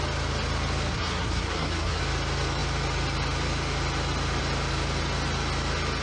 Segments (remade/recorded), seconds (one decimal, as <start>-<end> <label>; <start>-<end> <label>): 0.0-0.9 recorded; 0.9-2.0 remade; 2.0-6.0 recorded